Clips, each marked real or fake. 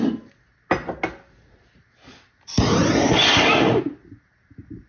real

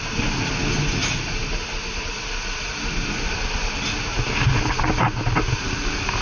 real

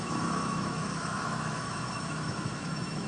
fake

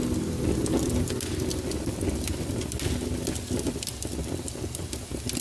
real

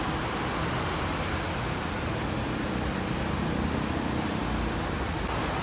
real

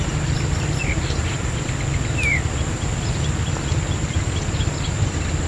real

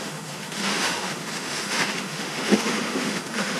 fake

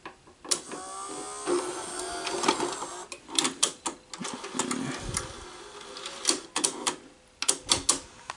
real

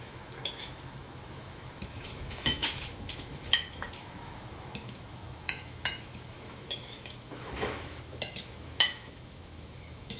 fake